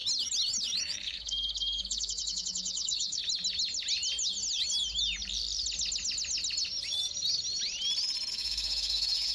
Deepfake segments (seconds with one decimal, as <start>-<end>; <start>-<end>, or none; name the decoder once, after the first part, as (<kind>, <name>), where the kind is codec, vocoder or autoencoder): 0.8-3.2 (autoencoder, DAC-VAE); 8.3-9.3